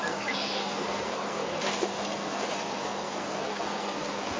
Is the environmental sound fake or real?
fake